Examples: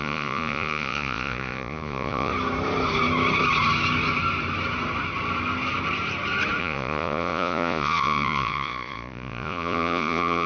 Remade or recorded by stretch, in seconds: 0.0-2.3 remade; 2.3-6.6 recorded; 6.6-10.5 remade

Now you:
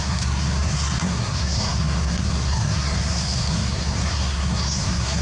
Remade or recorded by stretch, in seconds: 0.0-5.2 remade

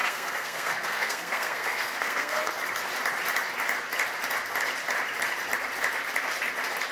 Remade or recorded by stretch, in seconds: 0.0-2.5 remade; 2.5-6.9 recorded

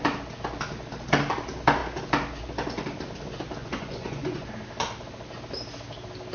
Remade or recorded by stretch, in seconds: 0.0-3.6 recorded; 3.6-4.5 remade; 4.5-6.3 recorded

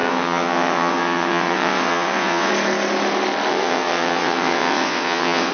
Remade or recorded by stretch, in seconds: 0.0-2.5 remade; 2.5-3.5 recorded; 3.5-5.5 remade

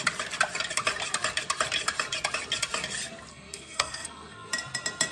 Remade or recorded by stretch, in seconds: 0.0-3.3 recorded; 3.3-4.5 remade; 4.5-5.1 recorded

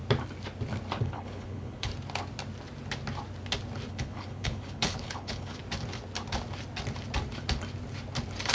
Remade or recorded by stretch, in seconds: 0.0-1.0 recorded; 1.0-1.9 remade; 1.9-3.9 recorded; 3.9-5.6 remade; 5.6-8.5 recorded

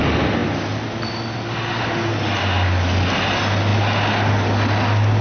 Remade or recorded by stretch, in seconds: 0.0-5.2 recorded